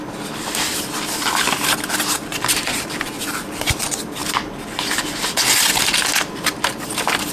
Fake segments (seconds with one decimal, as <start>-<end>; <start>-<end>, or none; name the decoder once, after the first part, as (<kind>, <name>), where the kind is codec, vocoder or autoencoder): 2.3-3.7 (vocoder, BigVGAN v2)